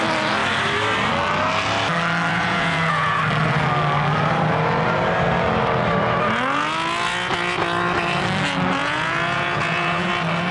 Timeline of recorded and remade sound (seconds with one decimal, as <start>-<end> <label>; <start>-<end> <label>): 0.0-2.3 recorded; 2.3-3.2 remade; 3.2-8.8 recorded; 8.8-10.1 remade; 10.1-10.5 recorded